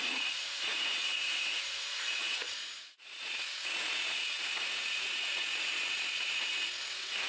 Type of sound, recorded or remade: remade